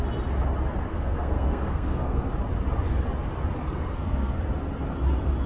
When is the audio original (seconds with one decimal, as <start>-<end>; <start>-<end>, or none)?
0.0-0.9; 2.3-3.6; 4.4-5.5